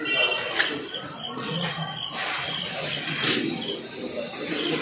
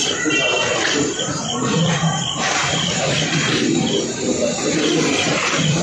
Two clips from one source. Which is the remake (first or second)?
second